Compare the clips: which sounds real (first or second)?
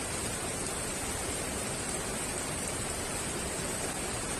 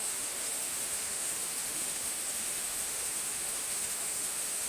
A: first